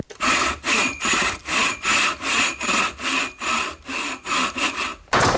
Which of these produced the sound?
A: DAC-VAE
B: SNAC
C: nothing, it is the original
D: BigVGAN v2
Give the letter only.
C